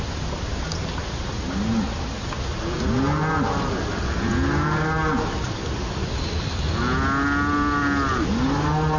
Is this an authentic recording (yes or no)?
yes